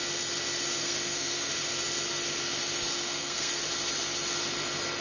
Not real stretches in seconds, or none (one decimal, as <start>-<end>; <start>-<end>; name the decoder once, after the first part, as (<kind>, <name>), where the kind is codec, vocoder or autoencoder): 0.8-1.5 (codec, SNAC); 2.9-3.6